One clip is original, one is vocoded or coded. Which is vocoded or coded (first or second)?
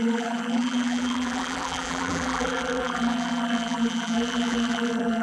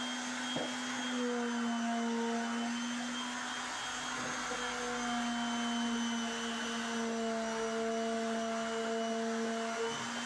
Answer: first